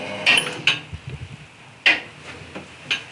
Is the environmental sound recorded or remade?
recorded